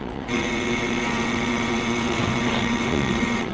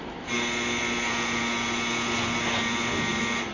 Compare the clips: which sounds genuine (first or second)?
second